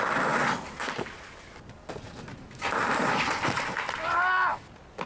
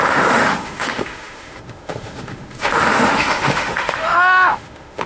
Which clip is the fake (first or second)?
second